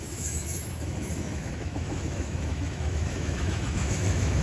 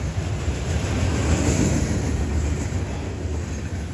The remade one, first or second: first